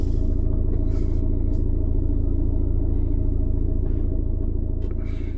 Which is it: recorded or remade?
recorded